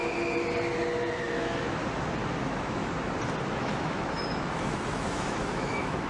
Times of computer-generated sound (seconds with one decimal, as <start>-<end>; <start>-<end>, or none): 1.2-1.8; 2.4-2.8; 3.5-6.1